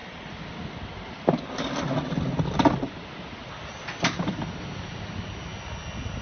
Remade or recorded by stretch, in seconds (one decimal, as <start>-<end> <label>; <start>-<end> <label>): 0.0-6.2 recorded